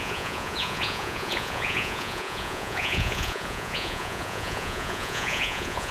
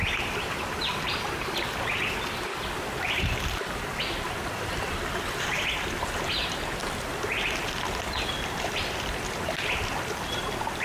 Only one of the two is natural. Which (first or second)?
second